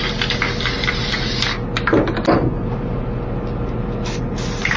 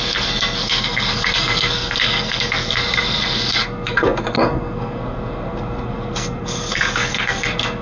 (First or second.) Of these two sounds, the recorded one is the first